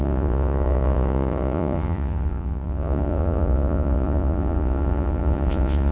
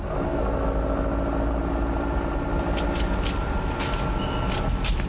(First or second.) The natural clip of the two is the second